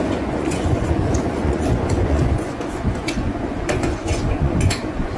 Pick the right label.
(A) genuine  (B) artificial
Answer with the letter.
B